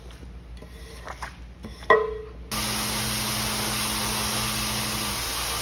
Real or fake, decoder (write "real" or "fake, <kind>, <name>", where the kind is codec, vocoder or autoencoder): real